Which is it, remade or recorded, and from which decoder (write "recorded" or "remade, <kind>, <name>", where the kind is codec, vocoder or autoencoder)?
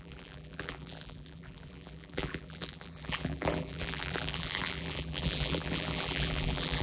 remade, vocoder, BigVGAN v2